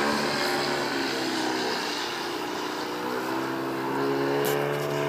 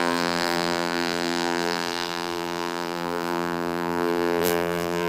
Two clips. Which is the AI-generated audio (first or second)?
second